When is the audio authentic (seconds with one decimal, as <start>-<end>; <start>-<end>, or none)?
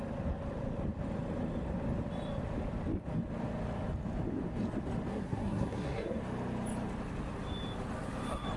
0.0-5.1; 6.2-8.6